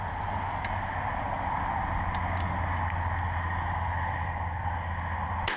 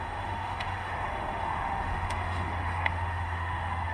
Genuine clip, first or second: first